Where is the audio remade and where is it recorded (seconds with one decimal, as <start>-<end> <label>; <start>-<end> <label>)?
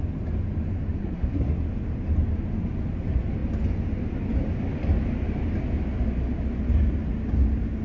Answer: 0.0-1.0 recorded; 1.0-1.6 remade; 1.6-7.8 recorded